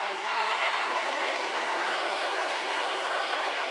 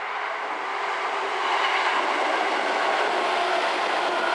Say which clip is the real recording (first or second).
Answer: second